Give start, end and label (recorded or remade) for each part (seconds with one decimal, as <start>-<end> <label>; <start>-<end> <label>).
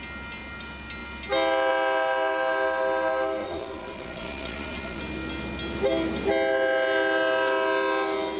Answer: 0.0-3.4 recorded; 3.4-5.0 remade; 5.0-8.4 recorded